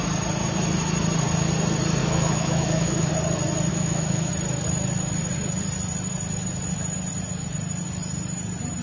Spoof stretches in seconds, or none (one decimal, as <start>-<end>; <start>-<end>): 2.0-3.1; 3.7-4.3